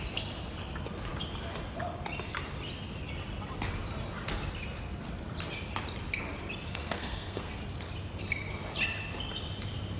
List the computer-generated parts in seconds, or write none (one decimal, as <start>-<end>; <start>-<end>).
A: 6.7-7.6